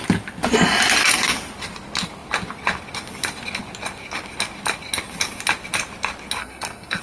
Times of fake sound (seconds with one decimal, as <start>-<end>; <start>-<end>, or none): 6.4-7.0